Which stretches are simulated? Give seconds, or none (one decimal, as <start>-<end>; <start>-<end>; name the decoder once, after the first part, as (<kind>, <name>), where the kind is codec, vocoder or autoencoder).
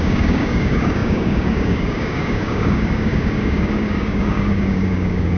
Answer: 0.0-5.4 (codec, DAC)